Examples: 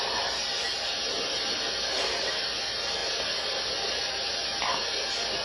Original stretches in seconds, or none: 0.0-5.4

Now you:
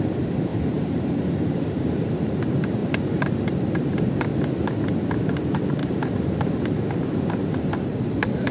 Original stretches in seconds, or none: 0.0-0.5; 2.1-5.8; 6.3-8.5

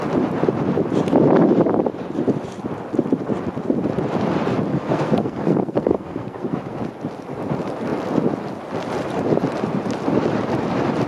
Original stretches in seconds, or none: 0.0-4.7; 6.9-11.1

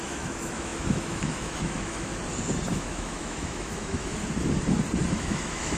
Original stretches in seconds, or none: 2.1-2.7; 4.2-5.1